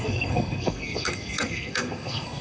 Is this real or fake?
fake